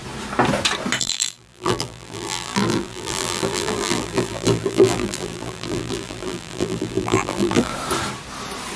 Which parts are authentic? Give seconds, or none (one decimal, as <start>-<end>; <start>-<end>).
0.0-1.0; 7.7-8.8